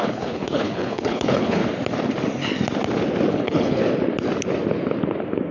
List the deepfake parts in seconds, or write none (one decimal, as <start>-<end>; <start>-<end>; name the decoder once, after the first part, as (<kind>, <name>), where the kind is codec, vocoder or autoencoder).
0.0-1.6 (codec, HILCodec); 3.3-3.8